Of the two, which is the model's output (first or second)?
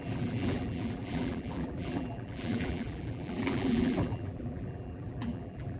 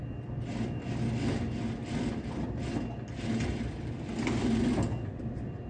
first